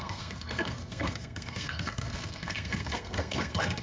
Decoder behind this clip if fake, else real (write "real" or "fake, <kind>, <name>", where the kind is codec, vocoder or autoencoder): fake, codec, SNAC